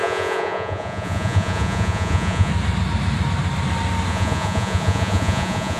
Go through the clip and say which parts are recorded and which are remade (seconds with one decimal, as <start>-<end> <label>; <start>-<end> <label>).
0.0-2.5 remade; 2.5-4.1 recorded; 4.1-5.8 remade